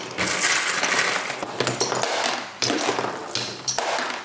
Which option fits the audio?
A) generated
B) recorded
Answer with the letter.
B